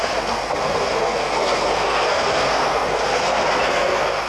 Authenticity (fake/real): fake